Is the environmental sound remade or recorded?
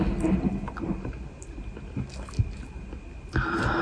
recorded